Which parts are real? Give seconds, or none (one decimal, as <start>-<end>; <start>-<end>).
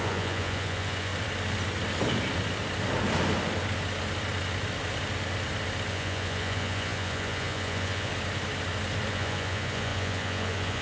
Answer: 1.1-5.9; 8.1-9.1